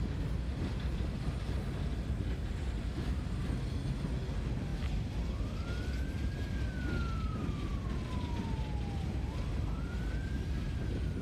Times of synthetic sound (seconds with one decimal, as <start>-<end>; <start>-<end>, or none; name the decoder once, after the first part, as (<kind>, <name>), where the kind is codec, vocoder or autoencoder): none